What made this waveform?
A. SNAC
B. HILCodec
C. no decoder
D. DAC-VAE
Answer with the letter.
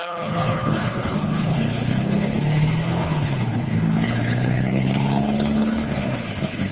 B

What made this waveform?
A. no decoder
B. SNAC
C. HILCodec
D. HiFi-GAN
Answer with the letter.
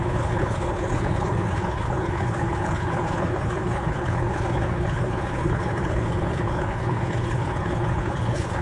C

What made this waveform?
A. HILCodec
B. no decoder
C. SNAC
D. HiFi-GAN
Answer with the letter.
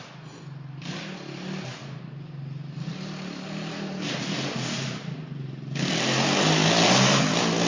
B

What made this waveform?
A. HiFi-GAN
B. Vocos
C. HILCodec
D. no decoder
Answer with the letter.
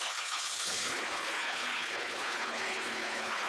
C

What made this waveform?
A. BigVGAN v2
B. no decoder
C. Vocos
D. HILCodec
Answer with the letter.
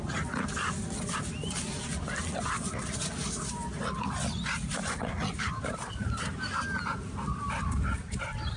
B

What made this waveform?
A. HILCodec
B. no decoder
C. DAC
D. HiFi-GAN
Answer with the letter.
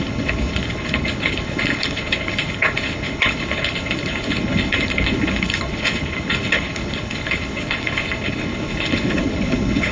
A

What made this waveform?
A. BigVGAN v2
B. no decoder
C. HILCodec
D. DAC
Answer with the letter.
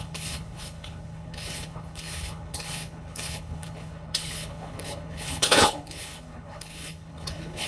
C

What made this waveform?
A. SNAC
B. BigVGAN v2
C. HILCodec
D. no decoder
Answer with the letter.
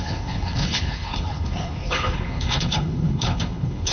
C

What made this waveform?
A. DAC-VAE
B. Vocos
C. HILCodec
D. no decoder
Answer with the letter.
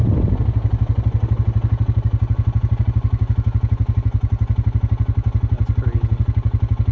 D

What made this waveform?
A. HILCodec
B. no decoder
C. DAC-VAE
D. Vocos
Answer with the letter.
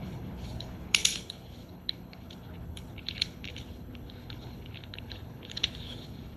A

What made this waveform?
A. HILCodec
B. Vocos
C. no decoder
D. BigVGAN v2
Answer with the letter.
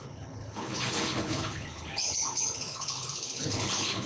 A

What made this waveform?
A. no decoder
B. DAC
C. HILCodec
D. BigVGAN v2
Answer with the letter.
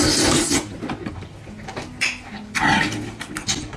A